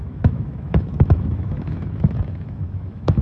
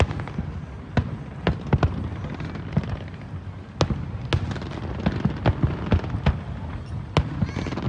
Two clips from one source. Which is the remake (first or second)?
first